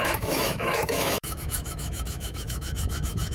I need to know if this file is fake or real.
fake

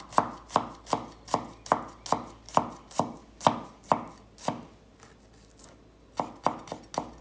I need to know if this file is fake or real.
real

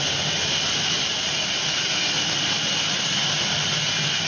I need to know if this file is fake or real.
real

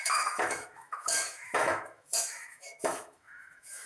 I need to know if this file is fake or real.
fake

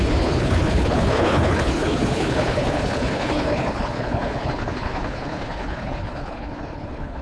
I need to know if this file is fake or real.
fake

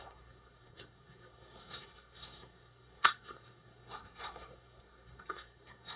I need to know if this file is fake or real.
fake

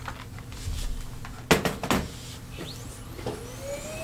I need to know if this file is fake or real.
real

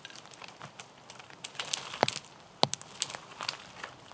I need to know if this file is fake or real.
real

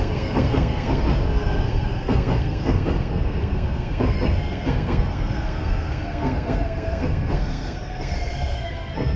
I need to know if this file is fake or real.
fake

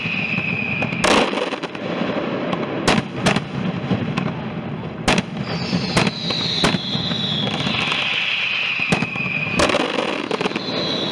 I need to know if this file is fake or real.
real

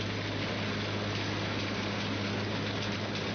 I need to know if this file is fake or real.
real